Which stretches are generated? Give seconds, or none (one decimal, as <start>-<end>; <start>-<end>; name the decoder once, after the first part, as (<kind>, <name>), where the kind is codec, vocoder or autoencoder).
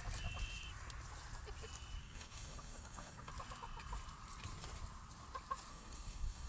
2.0-3.3 (codec, SNAC); 5.7-6.5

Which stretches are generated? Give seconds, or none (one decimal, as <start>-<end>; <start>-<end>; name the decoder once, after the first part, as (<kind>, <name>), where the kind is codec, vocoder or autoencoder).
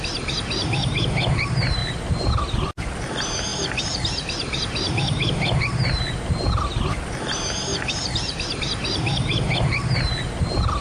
1.8-2.4 (vocoder, BigVGAN v2); 3.5-5.6; 7.7-8.6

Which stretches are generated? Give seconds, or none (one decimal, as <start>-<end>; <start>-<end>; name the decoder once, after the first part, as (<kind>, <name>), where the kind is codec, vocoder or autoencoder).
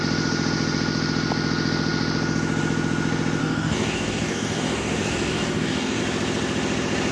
3.4-6.0 (codec, DAC)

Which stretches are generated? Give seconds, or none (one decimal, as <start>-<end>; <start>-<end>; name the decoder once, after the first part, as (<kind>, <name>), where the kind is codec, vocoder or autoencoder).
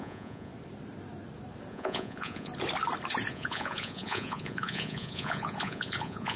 0.0-0.5 (vocoder, Vocos); 1.7-2.5; 3.3-6.4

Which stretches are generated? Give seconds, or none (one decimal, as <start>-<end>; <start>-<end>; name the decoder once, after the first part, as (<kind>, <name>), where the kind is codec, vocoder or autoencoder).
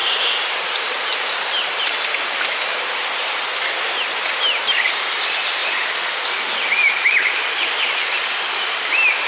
0.0-5.6 (vocoder, BigVGAN v2); 8.5-9.3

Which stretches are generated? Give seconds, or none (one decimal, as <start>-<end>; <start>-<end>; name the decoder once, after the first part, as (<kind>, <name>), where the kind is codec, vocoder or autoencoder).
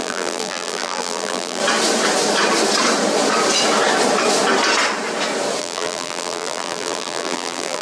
0.0-1.6 (vocoder, BigVGAN v2); 5.6-7.8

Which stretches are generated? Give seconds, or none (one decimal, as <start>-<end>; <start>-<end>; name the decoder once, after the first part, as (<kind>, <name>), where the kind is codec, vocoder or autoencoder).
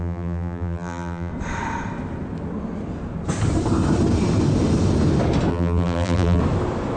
0.0-1.3 (vocoder, BigVGAN v2); 5.5-6.4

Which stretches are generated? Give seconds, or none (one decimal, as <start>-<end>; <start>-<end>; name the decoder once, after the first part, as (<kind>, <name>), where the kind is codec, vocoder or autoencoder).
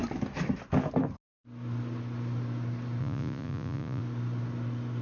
3.0-4.0 (vocoder, Vocos)